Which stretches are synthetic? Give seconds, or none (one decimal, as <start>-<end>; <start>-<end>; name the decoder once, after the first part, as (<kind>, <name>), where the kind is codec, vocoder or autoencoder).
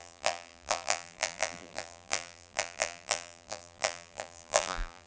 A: 0.0-5.1 (vocoder, BigVGAN v2)